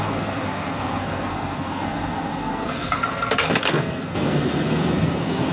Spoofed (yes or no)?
yes